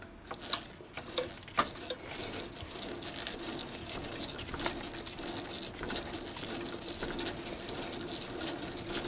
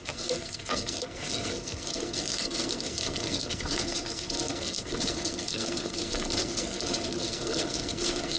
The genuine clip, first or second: first